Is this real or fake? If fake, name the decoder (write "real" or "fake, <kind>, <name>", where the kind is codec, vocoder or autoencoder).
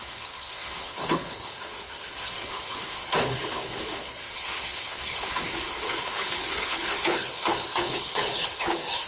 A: fake, codec, HILCodec